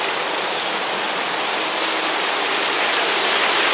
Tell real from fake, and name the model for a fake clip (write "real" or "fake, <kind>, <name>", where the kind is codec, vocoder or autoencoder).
real